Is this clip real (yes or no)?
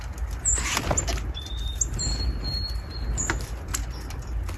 yes